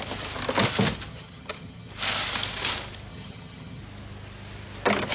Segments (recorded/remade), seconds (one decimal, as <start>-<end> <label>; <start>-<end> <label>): 0.0-1.1 recorded; 1.1-1.9 remade; 1.9-3.1 recorded; 3.1-3.8 remade; 3.8-5.1 recorded